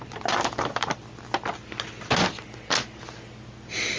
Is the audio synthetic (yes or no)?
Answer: no